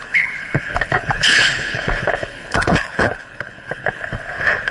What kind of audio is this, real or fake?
fake